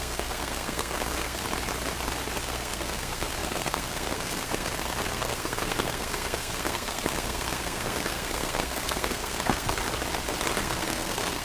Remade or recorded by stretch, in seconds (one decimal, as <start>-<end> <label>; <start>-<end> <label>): 0.0-1.4 remade; 1.4-2.4 recorded; 2.4-9.8 remade; 9.8-10.6 recorded; 10.6-11.4 remade